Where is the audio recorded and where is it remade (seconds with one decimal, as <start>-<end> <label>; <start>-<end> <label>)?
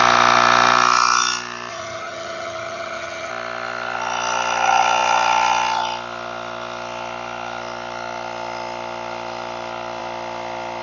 0.0-1.7 recorded; 1.7-3.3 remade; 3.3-10.8 recorded